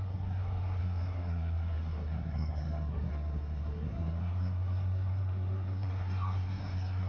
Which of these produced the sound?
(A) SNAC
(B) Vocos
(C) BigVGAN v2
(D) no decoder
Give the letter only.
A